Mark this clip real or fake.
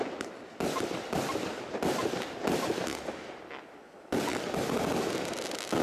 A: real